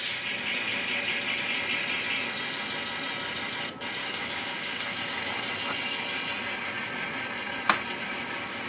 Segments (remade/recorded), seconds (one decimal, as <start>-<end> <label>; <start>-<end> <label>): 0.0-4.0 recorded; 4.0-5.0 remade; 5.0-8.7 recorded